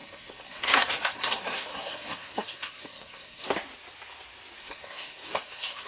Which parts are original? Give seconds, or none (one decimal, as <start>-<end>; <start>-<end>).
3.5-4.6